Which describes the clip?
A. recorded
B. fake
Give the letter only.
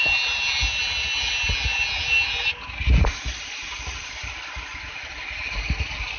A